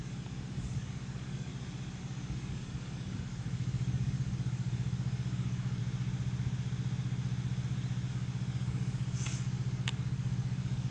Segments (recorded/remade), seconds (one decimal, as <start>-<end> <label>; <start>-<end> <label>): 0.0-1.5 remade; 1.5-2.0 recorded; 2.0-5.8 remade; 5.8-8.1 recorded; 8.1-10.9 remade